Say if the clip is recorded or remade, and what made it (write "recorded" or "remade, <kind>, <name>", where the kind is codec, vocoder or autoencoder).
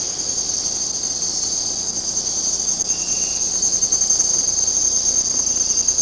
recorded